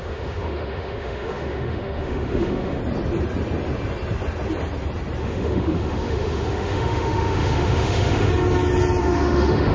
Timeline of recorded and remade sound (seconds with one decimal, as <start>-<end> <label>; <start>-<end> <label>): 0.0-2.8 remade; 2.8-5.2 recorded; 5.2-8.3 remade; 8.3-9.0 recorded; 9.0-9.7 remade